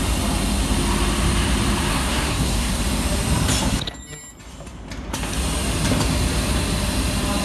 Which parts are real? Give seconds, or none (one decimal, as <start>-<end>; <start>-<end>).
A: 0.0-1.9; 2.8-7.4